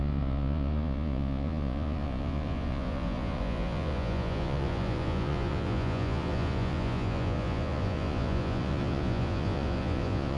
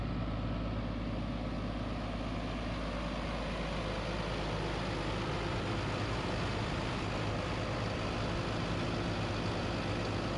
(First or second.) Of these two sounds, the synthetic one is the first